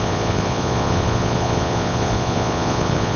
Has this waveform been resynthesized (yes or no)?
yes